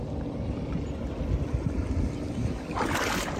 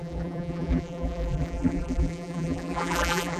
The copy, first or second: second